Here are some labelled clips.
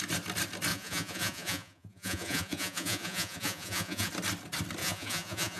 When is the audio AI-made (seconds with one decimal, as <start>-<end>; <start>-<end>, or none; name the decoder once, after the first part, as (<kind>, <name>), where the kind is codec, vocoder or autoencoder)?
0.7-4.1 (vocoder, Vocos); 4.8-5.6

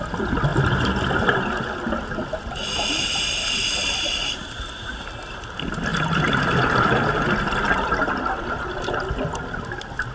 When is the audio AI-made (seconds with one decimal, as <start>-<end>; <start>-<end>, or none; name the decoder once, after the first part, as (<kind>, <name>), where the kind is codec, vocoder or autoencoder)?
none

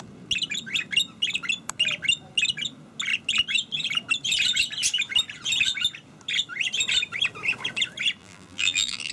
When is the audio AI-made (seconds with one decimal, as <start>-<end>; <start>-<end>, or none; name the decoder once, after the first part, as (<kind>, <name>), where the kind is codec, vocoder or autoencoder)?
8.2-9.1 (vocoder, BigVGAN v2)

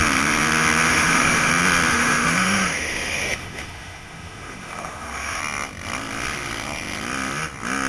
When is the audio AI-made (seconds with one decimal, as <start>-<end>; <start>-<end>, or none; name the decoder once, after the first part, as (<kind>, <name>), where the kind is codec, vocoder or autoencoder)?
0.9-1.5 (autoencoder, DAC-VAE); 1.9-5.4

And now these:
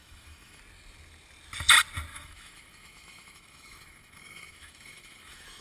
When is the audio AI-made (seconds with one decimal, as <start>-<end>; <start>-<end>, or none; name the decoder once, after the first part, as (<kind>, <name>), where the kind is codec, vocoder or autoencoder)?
0.0-0.6 (autoencoder, DAC-VAE); 2.1-5.6